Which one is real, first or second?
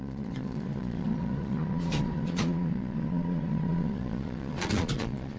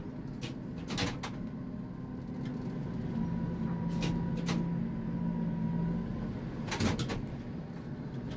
second